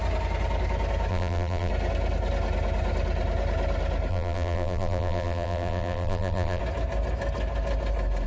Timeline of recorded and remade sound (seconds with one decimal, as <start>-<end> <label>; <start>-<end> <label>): 0.0-1.1 recorded; 1.1-1.7 remade; 1.7-4.1 recorded; 4.1-6.6 remade; 6.6-8.3 recorded